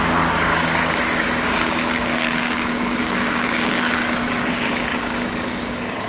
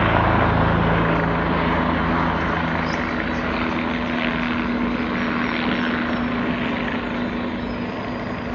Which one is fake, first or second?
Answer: first